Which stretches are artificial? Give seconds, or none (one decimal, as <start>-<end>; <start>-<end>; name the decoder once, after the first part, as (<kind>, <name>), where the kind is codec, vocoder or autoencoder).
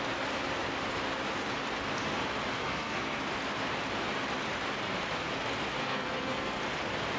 2.6-3.2 (codec, SNAC); 5.8-6.6